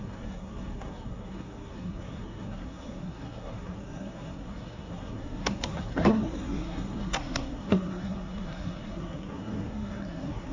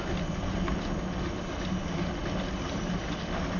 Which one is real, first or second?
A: second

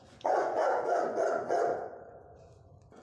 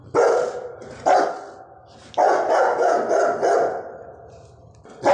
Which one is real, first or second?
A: second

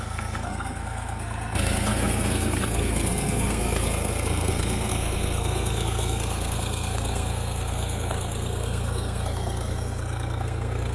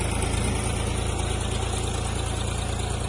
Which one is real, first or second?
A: second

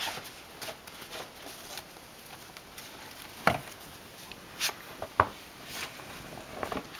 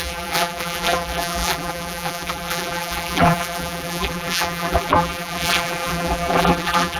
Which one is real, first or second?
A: first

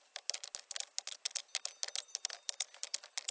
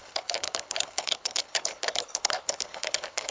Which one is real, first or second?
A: first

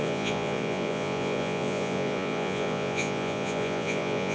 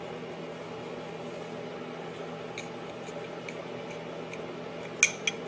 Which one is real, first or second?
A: second